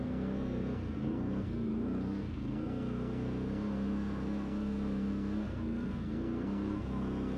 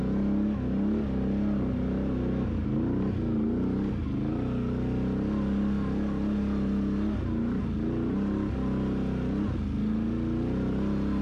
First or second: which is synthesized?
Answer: first